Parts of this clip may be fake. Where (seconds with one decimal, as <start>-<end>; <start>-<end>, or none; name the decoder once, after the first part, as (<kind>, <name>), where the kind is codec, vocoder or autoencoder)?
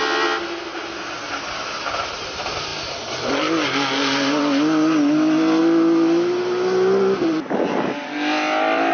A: none